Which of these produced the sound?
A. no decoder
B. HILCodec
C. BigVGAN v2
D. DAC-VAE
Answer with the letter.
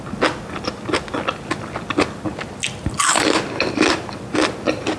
A